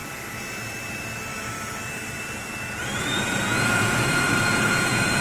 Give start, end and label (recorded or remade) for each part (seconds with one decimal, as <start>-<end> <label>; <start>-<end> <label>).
0.0-3.0 recorded; 3.0-5.2 remade